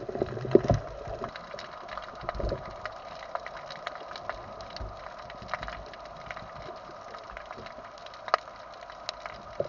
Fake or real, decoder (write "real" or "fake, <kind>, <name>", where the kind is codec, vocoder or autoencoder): real